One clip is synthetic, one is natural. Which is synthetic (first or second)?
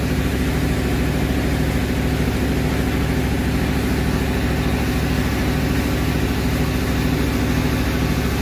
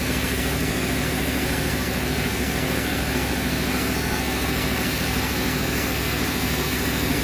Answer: second